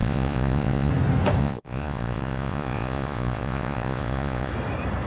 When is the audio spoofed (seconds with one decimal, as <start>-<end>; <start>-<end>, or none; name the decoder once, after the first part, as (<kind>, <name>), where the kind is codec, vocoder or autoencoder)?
0.0-0.9 (vocoder, Vocos); 1.4-4.5